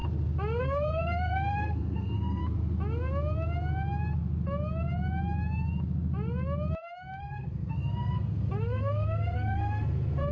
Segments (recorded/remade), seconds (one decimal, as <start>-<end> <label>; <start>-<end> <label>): 0.0-0.6 recorded; 0.6-2.4 remade; 2.4-7.2 recorded; 7.2-10.3 remade